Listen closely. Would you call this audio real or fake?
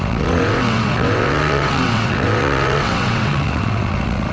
fake